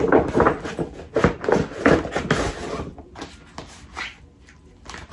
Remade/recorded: recorded